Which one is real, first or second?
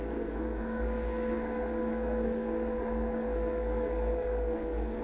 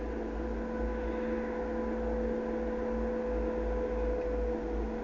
second